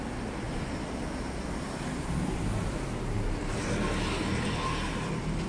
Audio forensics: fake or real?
real